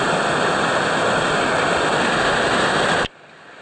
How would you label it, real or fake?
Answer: real